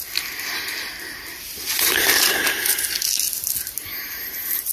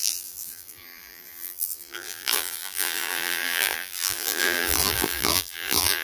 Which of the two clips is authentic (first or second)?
first